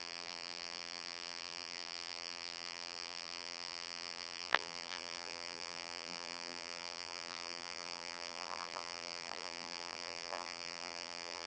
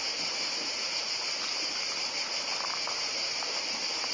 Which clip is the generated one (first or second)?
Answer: first